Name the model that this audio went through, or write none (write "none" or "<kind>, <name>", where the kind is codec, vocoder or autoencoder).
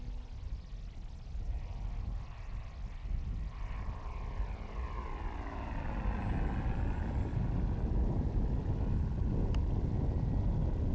none